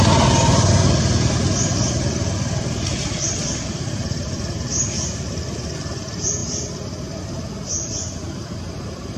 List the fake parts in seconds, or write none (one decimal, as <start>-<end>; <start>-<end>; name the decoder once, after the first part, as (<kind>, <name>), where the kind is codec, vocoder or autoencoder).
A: none

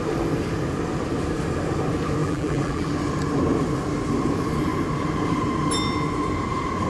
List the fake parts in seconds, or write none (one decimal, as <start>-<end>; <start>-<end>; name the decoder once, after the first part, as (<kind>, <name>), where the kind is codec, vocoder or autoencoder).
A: 2.2-2.9 (vocoder, BigVGAN v2)

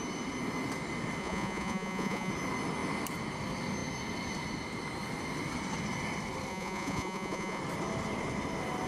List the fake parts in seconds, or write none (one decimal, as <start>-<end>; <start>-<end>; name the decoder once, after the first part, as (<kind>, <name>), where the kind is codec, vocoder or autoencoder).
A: 1.2-2.3 (vocoder, Vocos); 6.5-7.6